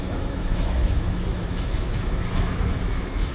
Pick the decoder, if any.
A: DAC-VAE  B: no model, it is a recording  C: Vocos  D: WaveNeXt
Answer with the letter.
A